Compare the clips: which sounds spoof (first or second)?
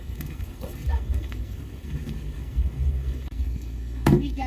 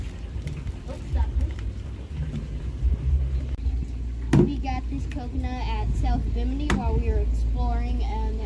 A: first